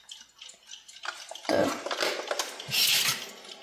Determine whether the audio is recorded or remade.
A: recorded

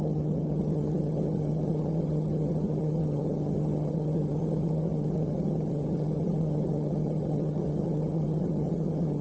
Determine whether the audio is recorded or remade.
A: remade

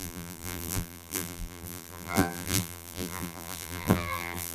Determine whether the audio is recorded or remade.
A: remade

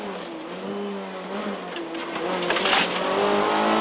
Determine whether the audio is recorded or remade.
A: recorded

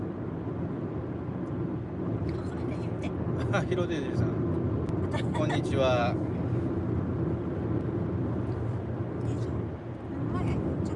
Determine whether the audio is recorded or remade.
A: recorded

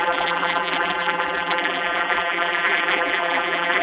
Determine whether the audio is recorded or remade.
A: remade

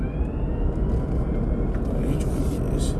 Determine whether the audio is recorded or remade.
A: recorded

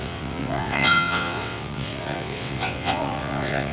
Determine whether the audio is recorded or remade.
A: remade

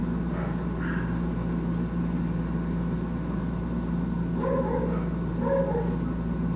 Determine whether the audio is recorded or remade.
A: recorded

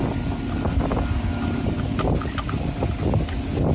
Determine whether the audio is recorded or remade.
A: recorded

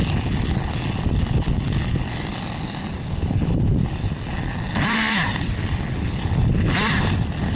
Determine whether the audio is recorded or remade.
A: recorded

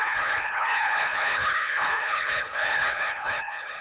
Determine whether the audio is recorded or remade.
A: remade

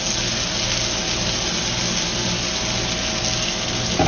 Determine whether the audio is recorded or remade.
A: recorded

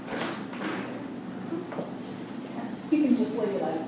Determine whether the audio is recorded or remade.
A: recorded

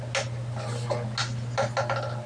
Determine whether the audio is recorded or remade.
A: recorded